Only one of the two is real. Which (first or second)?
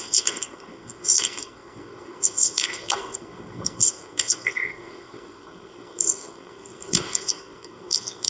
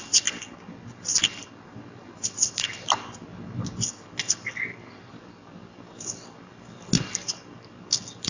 second